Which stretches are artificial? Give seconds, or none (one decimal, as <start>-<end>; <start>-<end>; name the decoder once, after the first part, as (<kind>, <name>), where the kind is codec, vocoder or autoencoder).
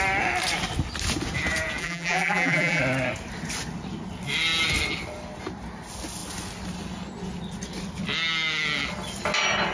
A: 1.8-2.8 (vocoder, BigVGAN v2)